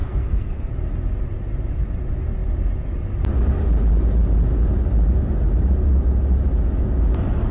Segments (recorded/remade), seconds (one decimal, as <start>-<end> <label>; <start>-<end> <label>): 0.0-0.7 remade; 0.7-7.5 recorded